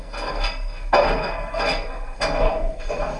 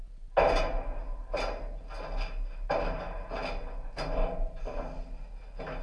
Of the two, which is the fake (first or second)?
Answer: first